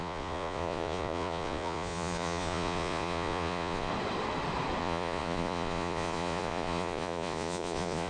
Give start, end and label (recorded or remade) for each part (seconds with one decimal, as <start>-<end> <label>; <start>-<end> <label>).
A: 0.0-3.9 remade; 3.9-4.8 recorded; 4.8-8.1 remade